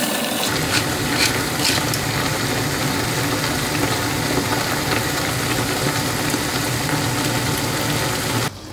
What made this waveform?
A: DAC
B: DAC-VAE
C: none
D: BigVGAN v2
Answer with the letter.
C